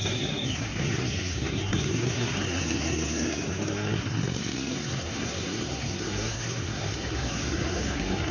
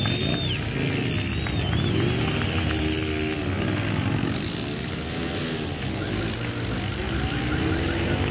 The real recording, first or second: second